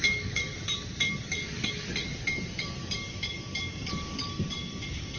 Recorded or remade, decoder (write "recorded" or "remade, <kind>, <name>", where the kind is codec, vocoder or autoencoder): remade, codec, DAC